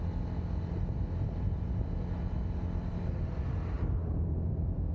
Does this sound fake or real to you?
real